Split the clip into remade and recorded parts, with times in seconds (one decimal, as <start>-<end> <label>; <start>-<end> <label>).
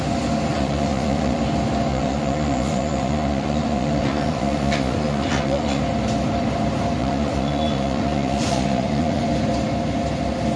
0.0-0.5 recorded; 0.5-1.4 remade; 1.4-1.9 recorded; 1.9-5.8 remade; 5.8-7.0 recorded; 7.0-9.2 remade; 9.2-10.6 recorded